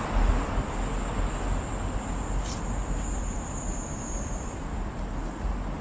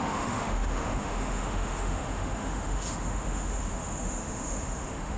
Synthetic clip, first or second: second